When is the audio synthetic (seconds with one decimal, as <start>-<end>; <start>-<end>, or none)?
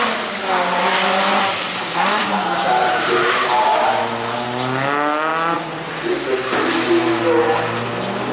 0.8-4.0